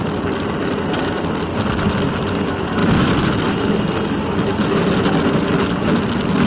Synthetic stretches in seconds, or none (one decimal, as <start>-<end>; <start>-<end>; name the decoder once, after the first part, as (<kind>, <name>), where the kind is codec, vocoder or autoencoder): none